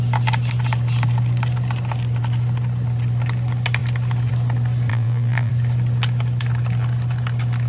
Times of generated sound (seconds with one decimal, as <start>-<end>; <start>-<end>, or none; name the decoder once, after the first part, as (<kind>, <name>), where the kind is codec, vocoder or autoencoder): 4.9-5.5 (vocoder, BigVGAN v2)